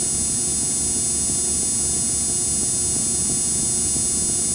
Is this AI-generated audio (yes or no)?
no